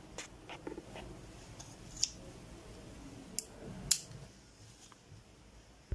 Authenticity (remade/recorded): recorded